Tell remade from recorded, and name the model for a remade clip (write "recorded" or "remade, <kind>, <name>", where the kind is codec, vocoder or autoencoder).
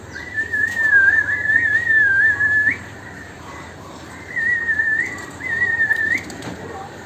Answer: remade, vocoder, BigVGAN v2